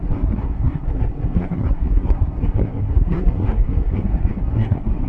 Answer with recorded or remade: remade